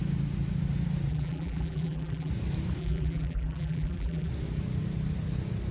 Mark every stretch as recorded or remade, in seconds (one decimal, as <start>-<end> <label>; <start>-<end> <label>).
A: 0.0-1.1 recorded; 1.1-2.3 remade; 2.3-2.8 recorded; 2.8-4.3 remade; 4.3-5.7 recorded